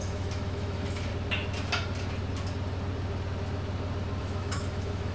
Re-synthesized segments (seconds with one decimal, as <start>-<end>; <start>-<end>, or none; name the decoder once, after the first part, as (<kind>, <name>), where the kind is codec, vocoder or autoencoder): 0.0-1.1 (autoencoder, DAC-VAE); 4.2-5.1